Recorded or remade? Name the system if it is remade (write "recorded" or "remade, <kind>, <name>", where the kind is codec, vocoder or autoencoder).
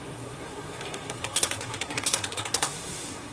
remade, codec, SNAC